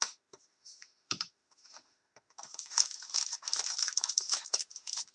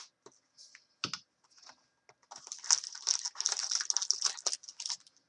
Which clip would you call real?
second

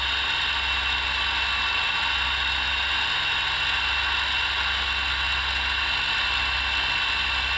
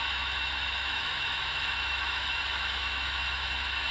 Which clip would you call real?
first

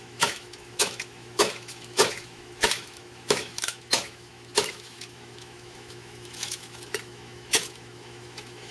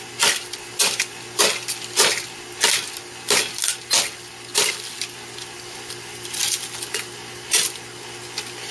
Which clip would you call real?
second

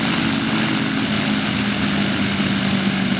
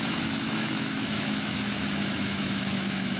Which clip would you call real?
first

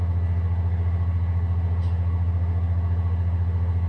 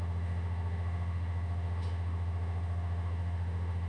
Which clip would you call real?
first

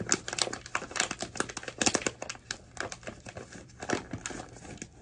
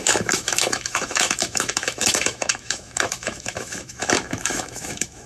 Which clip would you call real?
first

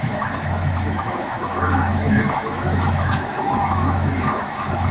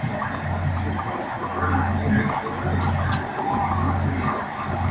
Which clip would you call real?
second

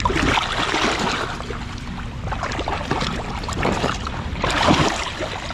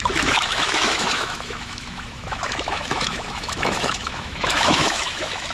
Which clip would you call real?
first